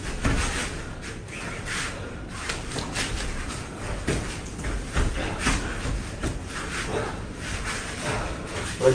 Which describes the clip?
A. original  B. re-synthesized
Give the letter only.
A